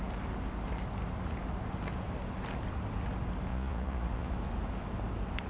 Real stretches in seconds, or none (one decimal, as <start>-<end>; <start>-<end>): 0.0-3.5; 4.3-5.5